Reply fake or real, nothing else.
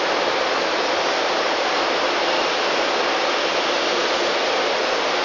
fake